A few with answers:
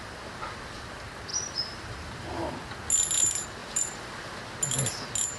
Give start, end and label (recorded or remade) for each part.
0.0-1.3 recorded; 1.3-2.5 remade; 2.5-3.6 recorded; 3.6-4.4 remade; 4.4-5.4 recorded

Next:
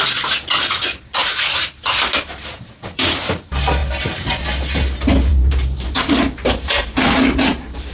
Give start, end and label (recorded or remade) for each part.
0.0-1.2 recorded; 1.2-3.3 remade; 3.3-5.3 recorded; 5.3-7.9 remade

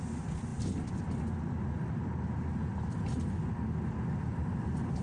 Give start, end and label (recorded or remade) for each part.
0.0-4.3 recorded; 4.3-5.0 remade

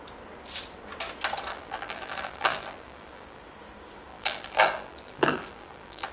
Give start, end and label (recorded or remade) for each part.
0.0-1.5 recorded; 1.5-3.4 remade; 3.4-4.1 recorded; 4.1-6.1 remade